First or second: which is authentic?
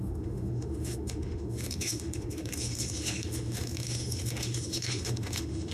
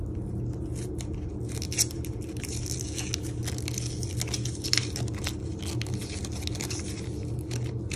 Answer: second